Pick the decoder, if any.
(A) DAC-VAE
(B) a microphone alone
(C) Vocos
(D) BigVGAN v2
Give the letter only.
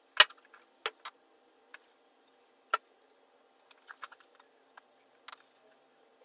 B